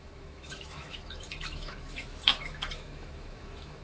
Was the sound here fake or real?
fake